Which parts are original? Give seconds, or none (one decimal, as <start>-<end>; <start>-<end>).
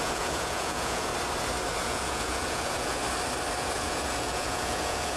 1.1-1.8; 3.0-3.6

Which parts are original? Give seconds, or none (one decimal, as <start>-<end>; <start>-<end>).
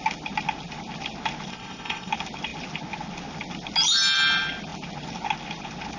0.0-1.5; 2.1-6.0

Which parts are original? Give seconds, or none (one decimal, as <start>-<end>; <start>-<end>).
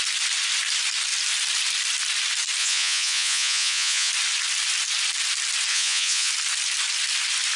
0.0-2.6; 4.1-5.7; 6.3-7.6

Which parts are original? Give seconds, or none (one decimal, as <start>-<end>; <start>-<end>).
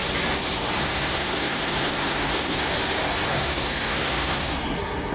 0.0-0.8; 2.7-3.3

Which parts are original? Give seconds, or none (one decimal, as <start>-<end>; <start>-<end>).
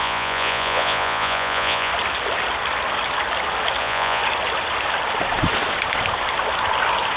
1.9-3.8; 4.2-7.2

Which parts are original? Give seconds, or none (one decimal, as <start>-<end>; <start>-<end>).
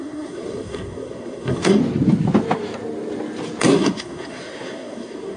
1.8-3.6